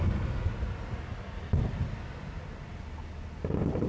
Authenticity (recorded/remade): recorded